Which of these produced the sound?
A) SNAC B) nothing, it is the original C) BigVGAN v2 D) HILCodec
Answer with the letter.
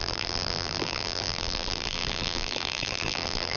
C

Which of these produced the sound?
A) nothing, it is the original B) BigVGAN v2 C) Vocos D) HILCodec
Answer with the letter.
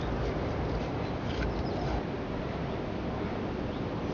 A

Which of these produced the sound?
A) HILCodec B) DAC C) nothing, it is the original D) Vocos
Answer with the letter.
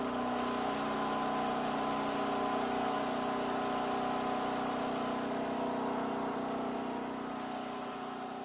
C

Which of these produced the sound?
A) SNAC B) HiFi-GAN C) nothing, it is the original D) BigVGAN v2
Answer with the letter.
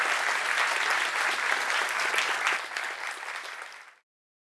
C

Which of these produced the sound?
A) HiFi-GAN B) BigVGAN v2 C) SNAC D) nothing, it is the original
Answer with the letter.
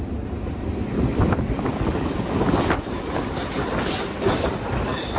D